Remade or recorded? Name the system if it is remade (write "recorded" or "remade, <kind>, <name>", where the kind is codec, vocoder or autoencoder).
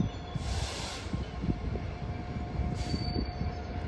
recorded